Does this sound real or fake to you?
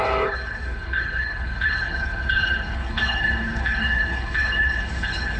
fake